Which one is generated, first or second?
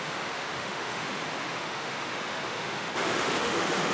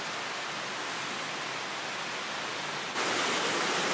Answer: first